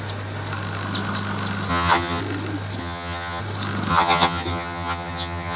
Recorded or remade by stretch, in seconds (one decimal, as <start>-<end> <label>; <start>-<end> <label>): 0.0-1.7 recorded; 1.7-2.2 remade; 2.2-2.8 recorded; 2.8-3.4 remade; 3.4-3.9 recorded; 3.9-5.6 remade